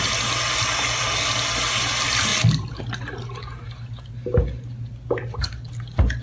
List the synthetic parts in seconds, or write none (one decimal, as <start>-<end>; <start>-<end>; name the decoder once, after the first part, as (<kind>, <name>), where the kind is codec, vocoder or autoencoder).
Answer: none